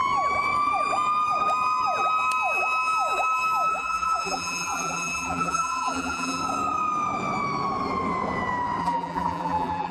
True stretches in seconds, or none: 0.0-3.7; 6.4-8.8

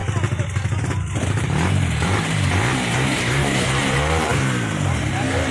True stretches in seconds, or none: 0.0-0.8

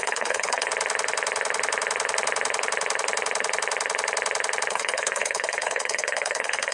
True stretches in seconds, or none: 0.7-4.7

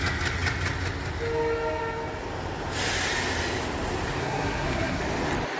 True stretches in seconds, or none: 0.0-4.2; 5.0-5.6